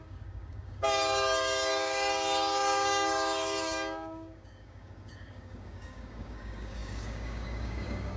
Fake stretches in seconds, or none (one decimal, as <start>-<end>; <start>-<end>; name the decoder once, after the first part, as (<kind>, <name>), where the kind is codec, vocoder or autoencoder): 0.0-8.2 (codec, DAC)